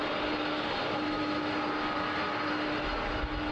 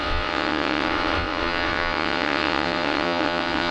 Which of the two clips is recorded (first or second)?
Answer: first